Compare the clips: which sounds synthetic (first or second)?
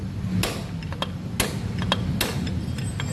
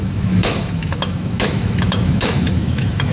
second